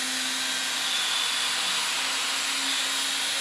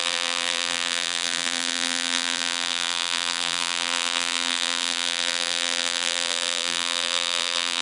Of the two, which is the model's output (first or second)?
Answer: second